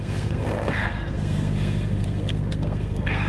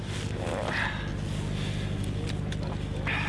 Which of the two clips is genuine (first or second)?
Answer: second